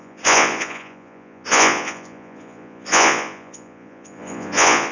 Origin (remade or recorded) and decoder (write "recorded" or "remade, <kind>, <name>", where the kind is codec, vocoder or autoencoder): remade, vocoder, Vocos